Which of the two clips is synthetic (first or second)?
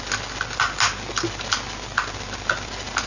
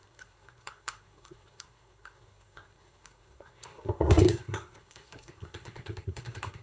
second